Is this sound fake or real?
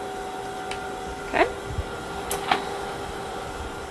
real